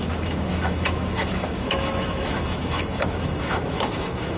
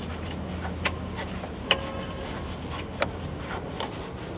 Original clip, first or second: second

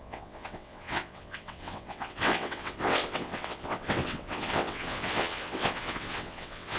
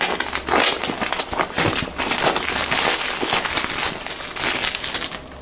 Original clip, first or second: second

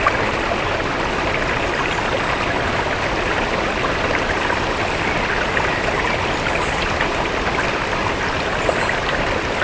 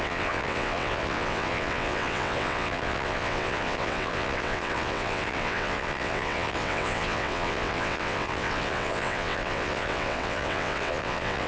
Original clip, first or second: first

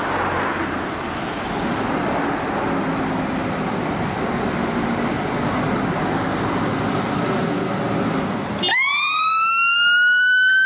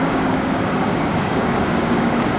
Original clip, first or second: first